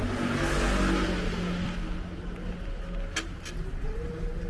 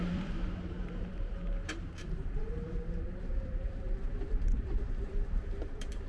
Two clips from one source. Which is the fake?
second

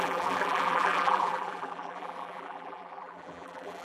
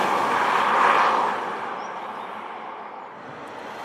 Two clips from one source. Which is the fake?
first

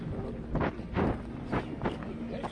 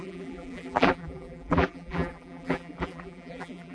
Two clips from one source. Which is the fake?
second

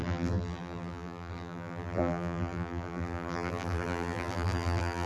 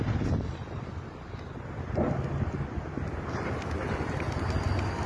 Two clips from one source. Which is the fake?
first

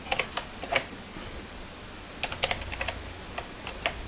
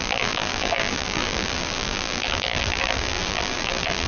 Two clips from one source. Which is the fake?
second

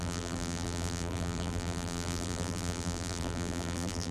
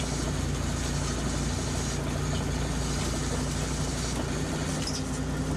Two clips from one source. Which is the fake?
first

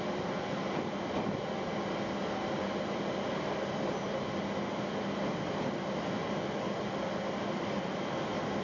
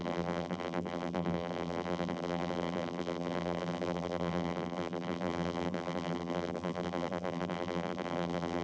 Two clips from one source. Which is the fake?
second